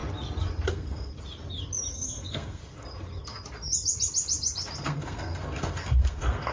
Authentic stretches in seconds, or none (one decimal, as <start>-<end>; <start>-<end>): 0.0-0.7; 1.1-1.9; 2.6-4.8